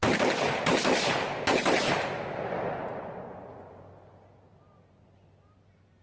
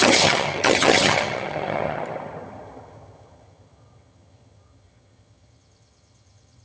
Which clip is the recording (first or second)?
first